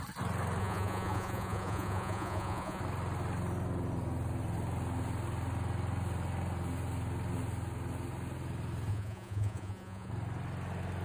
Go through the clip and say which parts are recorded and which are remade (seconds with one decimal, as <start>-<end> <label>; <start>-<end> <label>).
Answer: 0.0-0.6 recorded; 0.6-2.8 remade; 2.8-8.9 recorded; 8.9-10.1 remade; 10.1-11.0 recorded